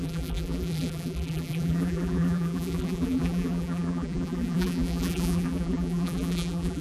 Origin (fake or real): fake